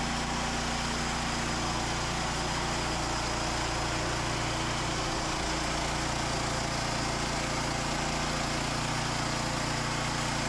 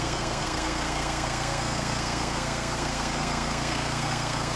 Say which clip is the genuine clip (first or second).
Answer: first